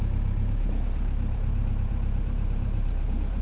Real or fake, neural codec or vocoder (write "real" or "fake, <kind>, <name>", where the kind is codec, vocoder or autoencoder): fake, vocoder, BigVGAN v2